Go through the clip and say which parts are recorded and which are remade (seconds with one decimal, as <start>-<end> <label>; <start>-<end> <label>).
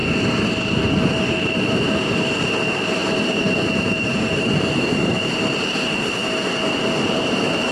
0.0-1.0 recorded; 1.0-6.2 remade; 6.2-6.8 recorded; 6.8-7.7 remade